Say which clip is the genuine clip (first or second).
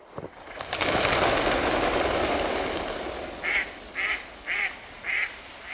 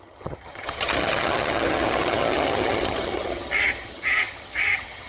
first